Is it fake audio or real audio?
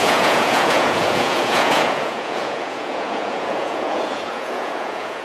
fake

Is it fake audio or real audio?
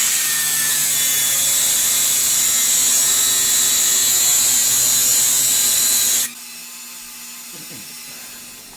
real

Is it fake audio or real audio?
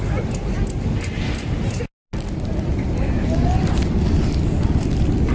real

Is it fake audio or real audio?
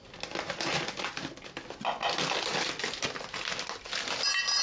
real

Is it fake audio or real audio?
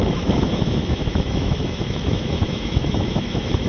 fake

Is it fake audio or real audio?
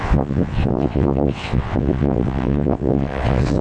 fake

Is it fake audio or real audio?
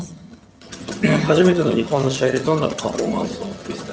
fake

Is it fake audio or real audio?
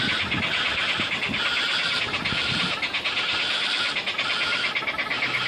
real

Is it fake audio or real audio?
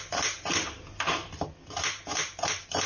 real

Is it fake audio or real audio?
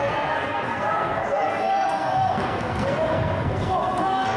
fake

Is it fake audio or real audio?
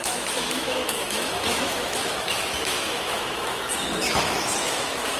fake